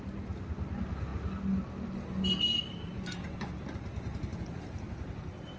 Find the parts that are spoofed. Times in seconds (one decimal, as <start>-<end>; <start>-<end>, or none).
none